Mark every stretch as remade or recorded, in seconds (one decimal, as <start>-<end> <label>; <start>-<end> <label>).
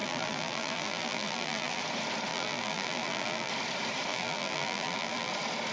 0.0-1.8 remade; 1.8-2.3 recorded; 2.3-3.5 remade; 3.5-4.1 recorded; 4.1-5.3 remade; 5.3-5.7 recorded